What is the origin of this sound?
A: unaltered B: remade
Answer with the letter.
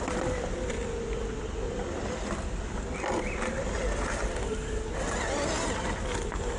A